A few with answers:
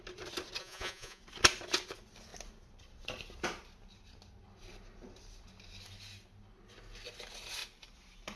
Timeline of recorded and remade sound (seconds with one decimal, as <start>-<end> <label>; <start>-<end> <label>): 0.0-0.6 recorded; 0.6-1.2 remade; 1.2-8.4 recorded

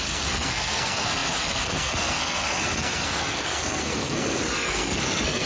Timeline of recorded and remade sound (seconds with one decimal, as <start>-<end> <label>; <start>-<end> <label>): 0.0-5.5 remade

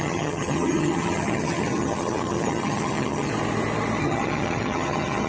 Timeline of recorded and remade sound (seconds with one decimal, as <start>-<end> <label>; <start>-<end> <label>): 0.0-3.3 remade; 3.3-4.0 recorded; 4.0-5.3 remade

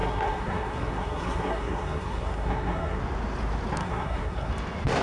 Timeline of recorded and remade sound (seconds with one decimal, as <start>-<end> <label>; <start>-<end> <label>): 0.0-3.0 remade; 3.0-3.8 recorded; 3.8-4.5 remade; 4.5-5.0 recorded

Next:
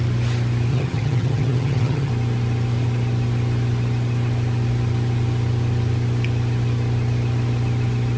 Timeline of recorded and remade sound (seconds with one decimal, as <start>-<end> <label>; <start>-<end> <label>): 0.0-0.7 recorded; 0.7-2.1 remade; 2.1-8.2 recorded

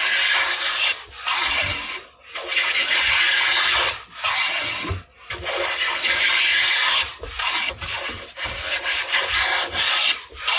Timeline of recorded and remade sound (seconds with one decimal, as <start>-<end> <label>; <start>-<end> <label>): 0.0-10.6 recorded

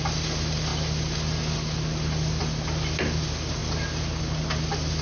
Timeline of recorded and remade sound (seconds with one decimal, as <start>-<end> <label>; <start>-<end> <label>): 0.0-5.0 recorded